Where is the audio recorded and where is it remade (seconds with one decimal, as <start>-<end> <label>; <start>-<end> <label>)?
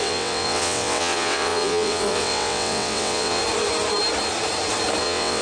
0.0-3.4 remade; 3.4-5.0 recorded; 5.0-5.4 remade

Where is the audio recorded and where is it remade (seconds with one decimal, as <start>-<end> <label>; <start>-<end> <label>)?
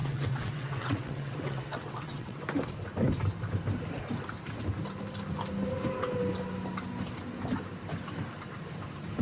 0.0-2.4 remade; 2.4-9.2 recorded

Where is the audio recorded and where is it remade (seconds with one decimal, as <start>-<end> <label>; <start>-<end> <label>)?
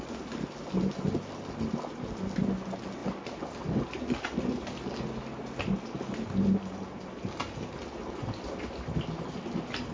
0.0-9.9 recorded